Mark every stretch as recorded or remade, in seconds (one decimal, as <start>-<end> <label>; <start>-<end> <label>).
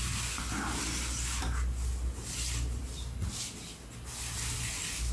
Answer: 0.0-5.1 recorded